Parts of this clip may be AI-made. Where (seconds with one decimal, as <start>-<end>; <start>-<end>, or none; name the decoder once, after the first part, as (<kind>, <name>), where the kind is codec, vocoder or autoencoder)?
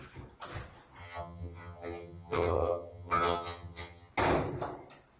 1.0-4.1 (vocoder, HiFi-GAN)